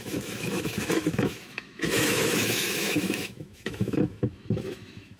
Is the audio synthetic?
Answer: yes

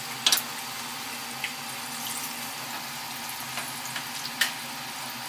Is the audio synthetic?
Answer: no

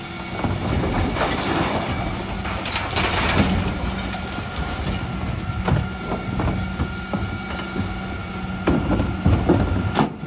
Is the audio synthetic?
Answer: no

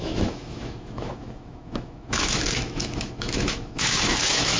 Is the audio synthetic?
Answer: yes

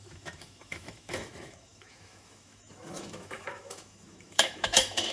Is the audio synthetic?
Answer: yes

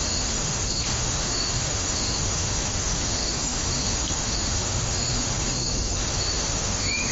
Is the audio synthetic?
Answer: yes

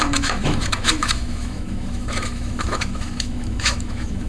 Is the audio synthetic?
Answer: yes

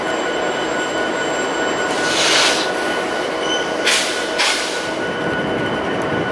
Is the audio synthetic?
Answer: no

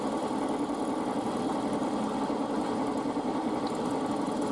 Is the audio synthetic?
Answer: no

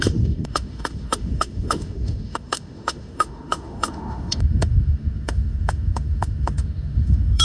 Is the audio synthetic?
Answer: yes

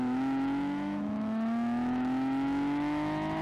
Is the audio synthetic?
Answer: yes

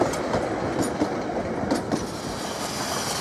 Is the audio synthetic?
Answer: no